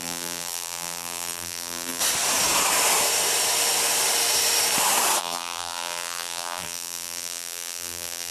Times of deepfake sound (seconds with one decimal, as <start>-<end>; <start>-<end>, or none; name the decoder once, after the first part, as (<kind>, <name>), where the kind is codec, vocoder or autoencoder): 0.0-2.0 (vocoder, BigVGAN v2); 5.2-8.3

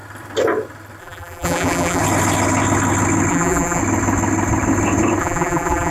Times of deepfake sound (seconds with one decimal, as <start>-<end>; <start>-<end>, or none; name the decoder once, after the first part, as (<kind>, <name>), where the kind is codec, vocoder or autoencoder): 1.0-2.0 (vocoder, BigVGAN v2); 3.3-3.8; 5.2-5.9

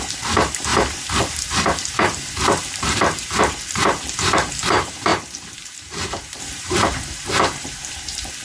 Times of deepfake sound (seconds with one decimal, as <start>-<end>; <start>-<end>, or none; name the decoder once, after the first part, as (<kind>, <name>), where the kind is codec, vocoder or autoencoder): 0.0-8.4 (vocoder, BigVGAN v2)

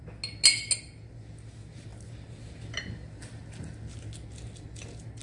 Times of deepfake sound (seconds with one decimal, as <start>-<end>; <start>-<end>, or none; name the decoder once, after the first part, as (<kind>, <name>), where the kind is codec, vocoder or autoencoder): none

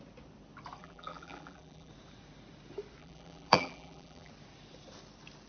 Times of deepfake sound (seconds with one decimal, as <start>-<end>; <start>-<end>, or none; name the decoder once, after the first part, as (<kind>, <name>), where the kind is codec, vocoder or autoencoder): 0.8-1.9 (vocoder, BigVGAN v2); 3.0-4.3

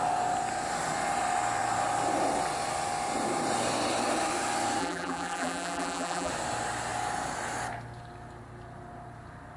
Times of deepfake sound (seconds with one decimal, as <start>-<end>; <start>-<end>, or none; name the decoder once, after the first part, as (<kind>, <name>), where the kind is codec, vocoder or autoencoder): 4.8-6.3 (vocoder, BigVGAN v2)

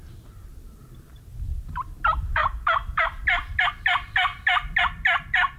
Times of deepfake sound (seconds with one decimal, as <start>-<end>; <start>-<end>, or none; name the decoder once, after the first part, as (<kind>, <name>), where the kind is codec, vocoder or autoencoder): 0.0-0.5 (vocoder, BigVGAN v2); 1.1-4.3; 4.8-5.6